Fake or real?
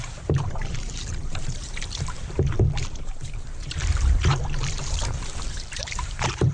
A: fake